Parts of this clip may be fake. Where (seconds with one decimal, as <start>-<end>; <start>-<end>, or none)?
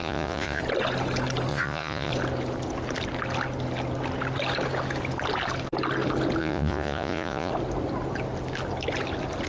0.0-0.6; 1.5-2.1; 6.4-7.5